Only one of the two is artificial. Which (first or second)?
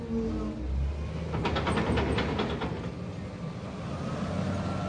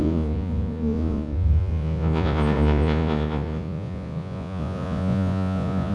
second